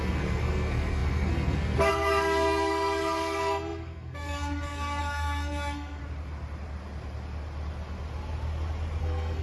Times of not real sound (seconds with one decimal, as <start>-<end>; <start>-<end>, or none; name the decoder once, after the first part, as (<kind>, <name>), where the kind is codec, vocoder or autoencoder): 0.0-6.0 (codec, SNAC); 9.0-9.4